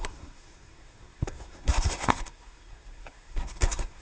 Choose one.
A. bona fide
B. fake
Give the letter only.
B